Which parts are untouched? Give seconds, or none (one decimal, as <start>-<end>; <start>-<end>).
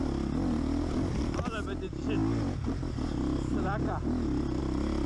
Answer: 0.0-5.1